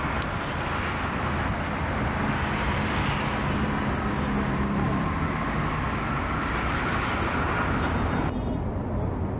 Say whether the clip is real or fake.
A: real